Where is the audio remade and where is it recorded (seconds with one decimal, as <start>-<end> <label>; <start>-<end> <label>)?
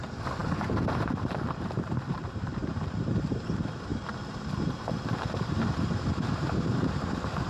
0.0-7.5 remade